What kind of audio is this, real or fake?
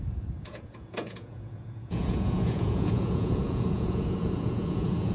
fake